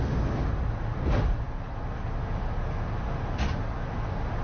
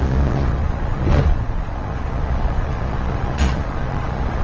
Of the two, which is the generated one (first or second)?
second